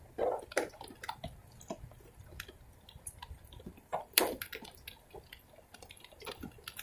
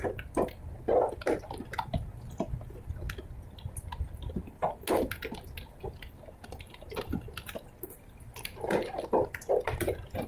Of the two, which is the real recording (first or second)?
second